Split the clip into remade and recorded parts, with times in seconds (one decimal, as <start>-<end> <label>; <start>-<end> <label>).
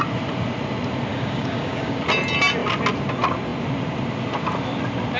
0.0-1.1 recorded; 1.1-2.0 remade; 2.0-5.2 recorded